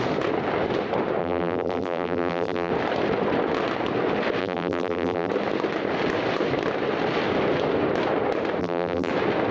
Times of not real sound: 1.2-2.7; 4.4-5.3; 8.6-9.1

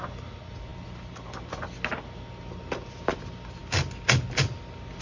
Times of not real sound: none

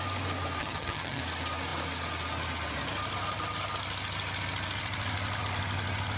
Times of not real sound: 0.6-1.2

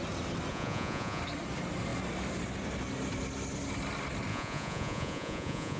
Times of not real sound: 0.5-1.2; 4.3-5.8

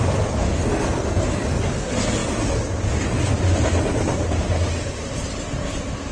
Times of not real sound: none